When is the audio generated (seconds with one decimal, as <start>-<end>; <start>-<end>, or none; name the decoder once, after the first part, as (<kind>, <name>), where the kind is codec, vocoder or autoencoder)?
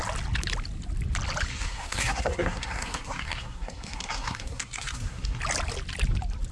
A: 1.5-5.4 (codec, SNAC)